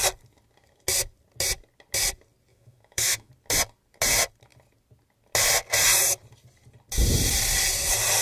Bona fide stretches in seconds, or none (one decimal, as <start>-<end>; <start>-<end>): 0.0-2.5; 3.3-8.2